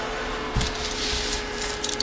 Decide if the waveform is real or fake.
real